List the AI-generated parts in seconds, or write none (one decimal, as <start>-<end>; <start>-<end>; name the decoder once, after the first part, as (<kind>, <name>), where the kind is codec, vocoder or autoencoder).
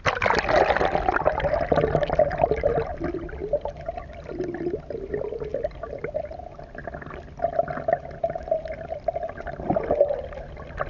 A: none